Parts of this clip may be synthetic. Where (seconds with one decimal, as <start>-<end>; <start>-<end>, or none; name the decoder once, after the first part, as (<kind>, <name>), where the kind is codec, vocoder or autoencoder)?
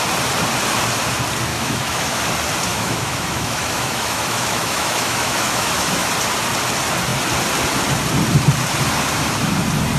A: 1.5-2.2 (autoencoder, DAC-VAE); 2.7-6.1